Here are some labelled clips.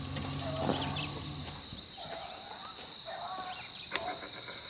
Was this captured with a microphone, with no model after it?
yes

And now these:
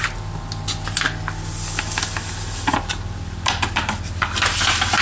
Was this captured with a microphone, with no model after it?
yes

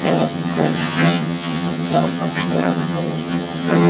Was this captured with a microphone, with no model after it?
no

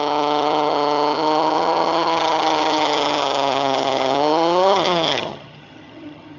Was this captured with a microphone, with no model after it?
no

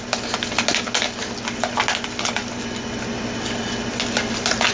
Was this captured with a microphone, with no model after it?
yes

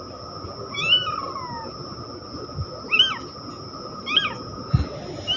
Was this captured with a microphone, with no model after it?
yes